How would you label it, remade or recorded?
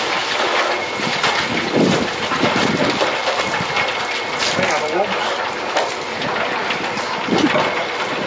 recorded